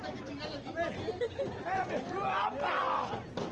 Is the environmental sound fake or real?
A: real